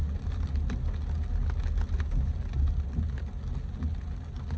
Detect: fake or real real